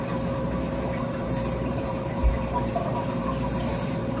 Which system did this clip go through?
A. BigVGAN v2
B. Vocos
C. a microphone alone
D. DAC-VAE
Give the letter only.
A